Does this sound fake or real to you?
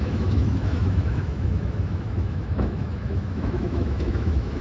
fake